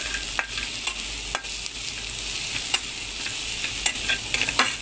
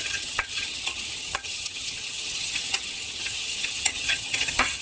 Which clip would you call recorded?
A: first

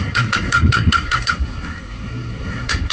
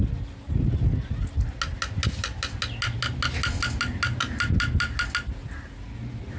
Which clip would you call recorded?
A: second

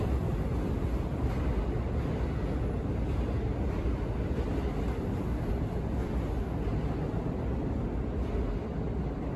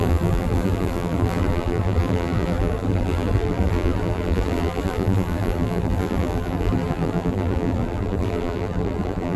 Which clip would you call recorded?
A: first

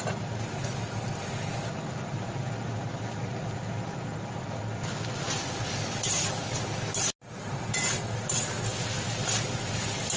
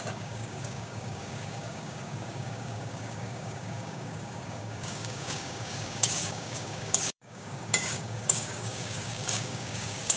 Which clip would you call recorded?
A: first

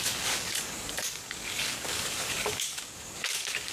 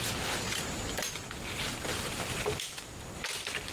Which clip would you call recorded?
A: second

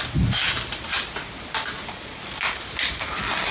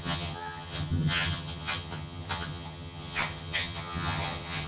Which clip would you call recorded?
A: first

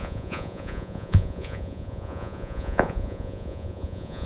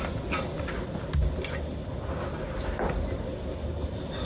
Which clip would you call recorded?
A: second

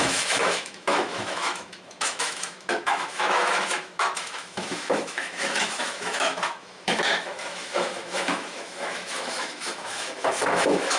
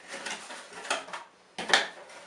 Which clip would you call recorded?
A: second